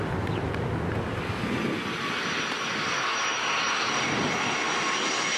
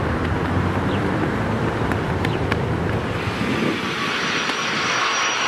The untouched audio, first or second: first